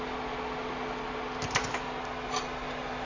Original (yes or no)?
yes